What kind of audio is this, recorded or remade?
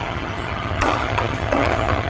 remade